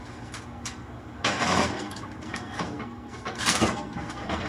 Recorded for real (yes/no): no